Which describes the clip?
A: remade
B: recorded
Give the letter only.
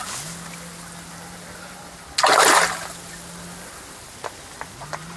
B